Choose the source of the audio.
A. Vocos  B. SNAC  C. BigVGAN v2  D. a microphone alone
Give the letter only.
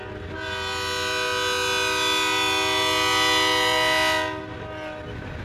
D